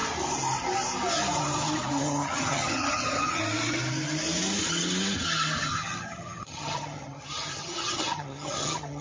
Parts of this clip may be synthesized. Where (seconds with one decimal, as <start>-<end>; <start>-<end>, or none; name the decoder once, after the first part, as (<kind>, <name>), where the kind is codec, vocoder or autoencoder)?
2.0-3.4 (vocoder, HiFi-GAN); 5.6-9.0